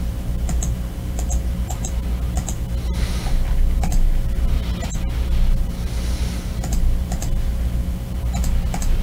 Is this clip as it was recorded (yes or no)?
yes